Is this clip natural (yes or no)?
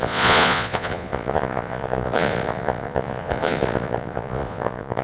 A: no